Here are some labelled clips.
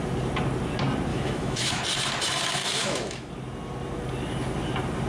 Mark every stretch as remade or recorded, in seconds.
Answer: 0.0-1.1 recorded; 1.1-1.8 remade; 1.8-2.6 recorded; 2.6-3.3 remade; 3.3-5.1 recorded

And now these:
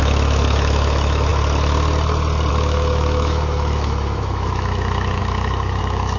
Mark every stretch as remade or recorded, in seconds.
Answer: 0.0-1.3 remade; 1.3-2.5 recorded; 2.5-6.2 remade

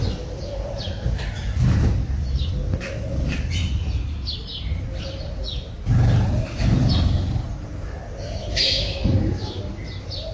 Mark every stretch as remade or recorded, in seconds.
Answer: 0.0-8.4 recorded; 8.4-9.6 remade; 9.6-10.3 recorded

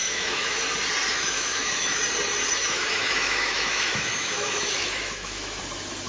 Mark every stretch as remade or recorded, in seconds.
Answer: 0.0-0.6 remade; 0.6-1.1 recorded; 1.1-2.0 remade; 2.0-2.6 recorded; 2.6-5.6 remade; 5.6-6.1 recorded

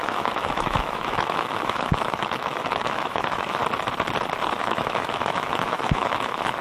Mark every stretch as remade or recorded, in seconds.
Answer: 0.0-3.6 remade; 3.6-4.6 recorded; 4.6-6.6 remade

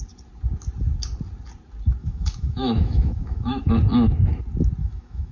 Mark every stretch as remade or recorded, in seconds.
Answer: 0.0-2.0 recorded; 2.0-3.7 remade; 3.7-4.8 recorded; 4.8-5.3 remade

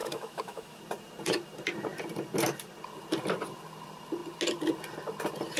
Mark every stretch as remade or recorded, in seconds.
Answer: 0.0-0.8 remade; 0.8-5.6 recorded